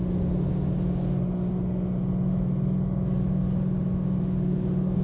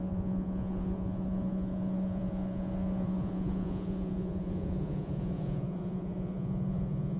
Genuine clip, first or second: first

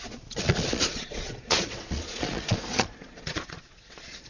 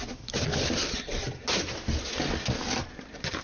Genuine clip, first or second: second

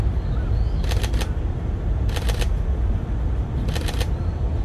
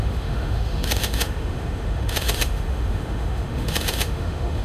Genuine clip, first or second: first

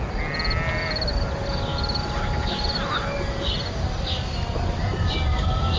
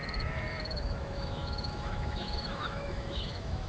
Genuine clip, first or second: first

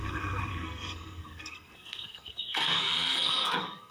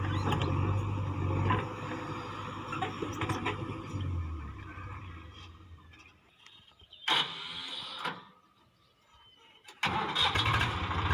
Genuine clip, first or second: second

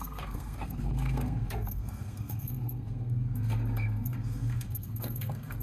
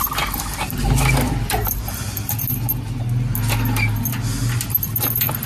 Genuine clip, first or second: second